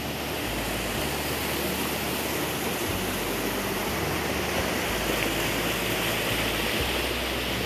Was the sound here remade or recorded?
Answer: recorded